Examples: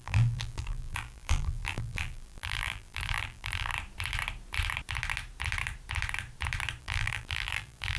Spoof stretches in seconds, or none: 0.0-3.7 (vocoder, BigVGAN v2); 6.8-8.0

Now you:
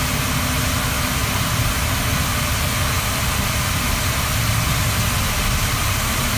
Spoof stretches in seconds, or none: 1.2-2.1 (vocoder, BigVGAN v2)

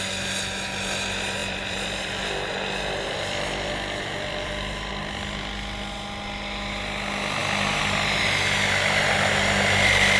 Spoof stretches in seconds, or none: 1.4-4.9 (vocoder, BigVGAN v2)

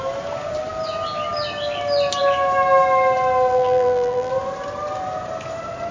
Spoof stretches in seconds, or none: 3.5-4.3 (vocoder, BigVGAN v2)

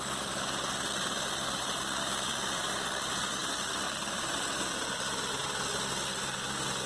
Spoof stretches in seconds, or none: 3.4-5.4 (vocoder, BigVGAN v2)

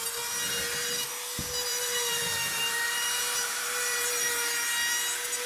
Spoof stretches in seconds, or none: 1.7-5.0 (vocoder, BigVGAN v2)

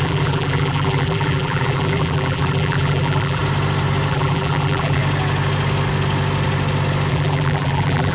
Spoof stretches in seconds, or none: 0.0-3.4 (vocoder, BigVGAN v2); 4.1-5.0; 7.1-8.1